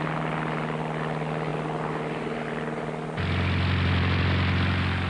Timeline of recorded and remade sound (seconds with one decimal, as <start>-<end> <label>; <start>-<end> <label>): 0.0-5.1 recorded